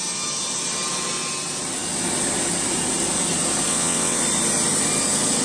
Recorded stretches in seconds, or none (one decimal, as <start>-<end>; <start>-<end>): 0.0-3.7; 4.2-5.4